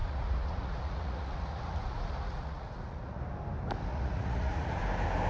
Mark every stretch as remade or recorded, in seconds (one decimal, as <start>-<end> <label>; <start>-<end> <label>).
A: 0.0-3.2 remade; 3.2-3.9 recorded; 3.9-4.8 remade; 4.8-5.3 recorded